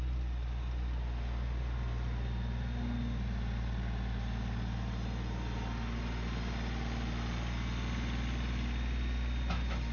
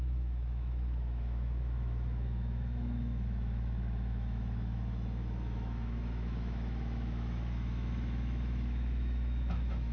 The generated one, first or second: second